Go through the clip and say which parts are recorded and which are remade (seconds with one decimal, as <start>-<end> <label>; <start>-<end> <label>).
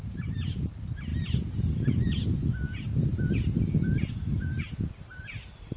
0.0-5.8 recorded